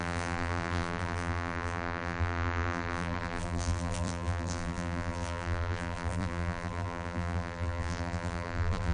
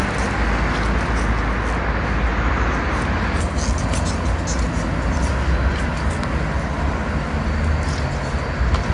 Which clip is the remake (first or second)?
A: first